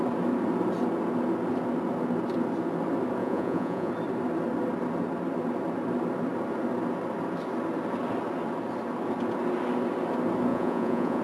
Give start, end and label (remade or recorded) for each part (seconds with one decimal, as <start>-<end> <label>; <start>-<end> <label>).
0.0-3.2 recorded; 3.2-3.9 remade; 3.9-10.5 recorded; 10.5-11.2 remade